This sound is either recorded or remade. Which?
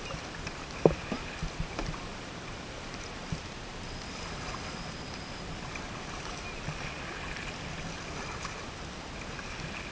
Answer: recorded